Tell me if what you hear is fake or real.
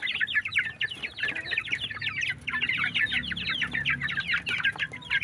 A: real